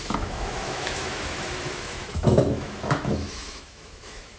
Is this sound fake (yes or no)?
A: yes